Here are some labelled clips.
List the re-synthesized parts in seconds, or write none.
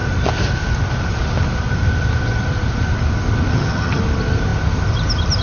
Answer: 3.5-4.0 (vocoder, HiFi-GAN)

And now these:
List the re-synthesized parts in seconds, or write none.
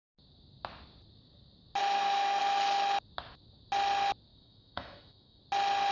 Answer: 1.8-2.4 (autoencoder, DAC-VAE); 4.3-5.4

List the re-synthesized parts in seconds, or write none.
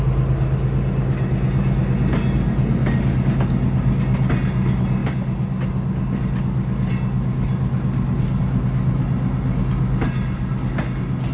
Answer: none